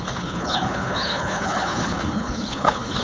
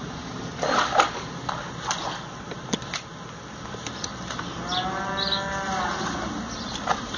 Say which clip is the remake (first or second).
first